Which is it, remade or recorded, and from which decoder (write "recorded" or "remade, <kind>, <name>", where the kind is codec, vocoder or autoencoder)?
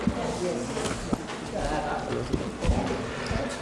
recorded